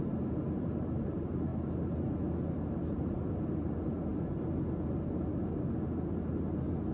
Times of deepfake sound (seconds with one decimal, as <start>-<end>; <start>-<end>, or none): none